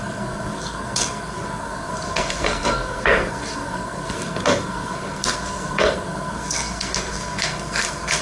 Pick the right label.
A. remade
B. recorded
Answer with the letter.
A